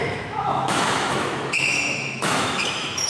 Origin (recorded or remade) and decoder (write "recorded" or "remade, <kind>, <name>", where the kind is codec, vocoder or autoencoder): remade, autoencoder, DAC-VAE